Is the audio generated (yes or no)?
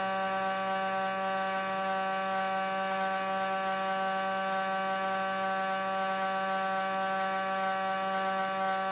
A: no